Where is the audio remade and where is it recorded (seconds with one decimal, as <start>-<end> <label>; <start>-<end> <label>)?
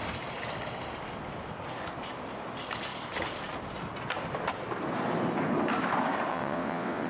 0.0-6.3 recorded; 6.3-7.1 remade